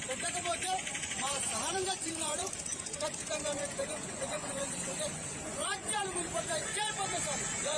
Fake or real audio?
fake